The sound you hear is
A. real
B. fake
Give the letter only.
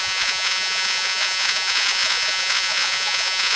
B